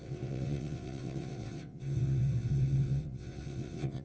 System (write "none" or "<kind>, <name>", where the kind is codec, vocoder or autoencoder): vocoder, WaveNeXt